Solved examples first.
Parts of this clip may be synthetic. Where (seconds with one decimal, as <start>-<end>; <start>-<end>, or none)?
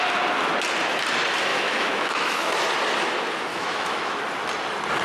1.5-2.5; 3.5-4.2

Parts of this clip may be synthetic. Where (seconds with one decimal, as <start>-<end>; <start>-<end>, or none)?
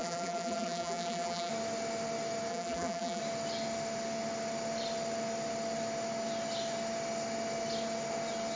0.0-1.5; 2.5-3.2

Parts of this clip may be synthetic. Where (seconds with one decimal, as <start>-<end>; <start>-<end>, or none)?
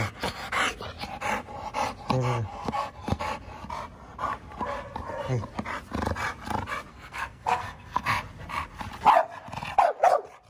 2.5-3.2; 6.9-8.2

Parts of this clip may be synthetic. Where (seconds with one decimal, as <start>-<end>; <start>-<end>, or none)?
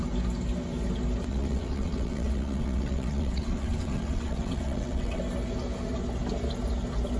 1.3-5.2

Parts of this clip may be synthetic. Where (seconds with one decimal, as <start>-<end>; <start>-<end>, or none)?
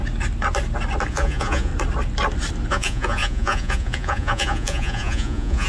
1.1-1.7; 2.7-5.7